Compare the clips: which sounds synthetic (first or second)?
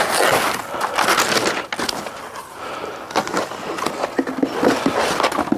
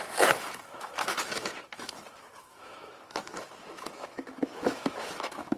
second